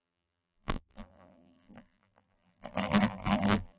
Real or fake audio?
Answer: fake